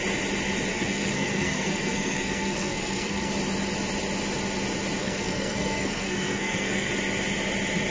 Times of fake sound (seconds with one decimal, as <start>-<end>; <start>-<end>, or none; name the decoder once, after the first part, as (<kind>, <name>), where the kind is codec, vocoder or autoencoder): 0.7-3.3 (codec, SNAC); 5.0-6.9